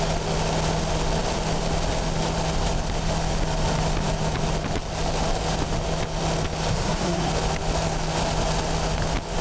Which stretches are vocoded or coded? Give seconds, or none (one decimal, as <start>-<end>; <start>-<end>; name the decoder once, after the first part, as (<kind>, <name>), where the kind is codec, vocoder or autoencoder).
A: 6.7-7.3 (codec, SNAC)